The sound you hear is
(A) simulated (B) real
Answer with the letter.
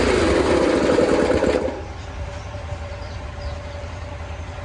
A